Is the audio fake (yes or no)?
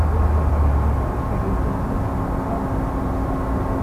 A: no